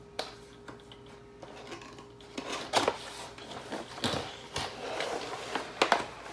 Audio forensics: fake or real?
real